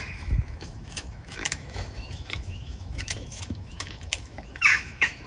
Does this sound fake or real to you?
fake